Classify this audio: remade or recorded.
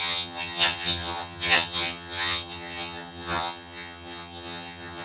remade